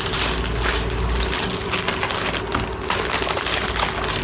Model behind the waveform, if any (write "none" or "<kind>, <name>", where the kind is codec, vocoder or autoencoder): none